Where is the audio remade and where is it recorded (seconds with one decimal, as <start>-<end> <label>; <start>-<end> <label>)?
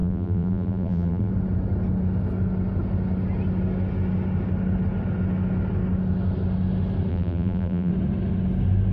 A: 0.0-1.3 remade; 1.3-7.1 recorded; 7.1-7.9 remade; 7.9-8.9 recorded